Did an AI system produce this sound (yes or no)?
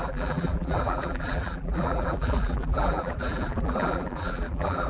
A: yes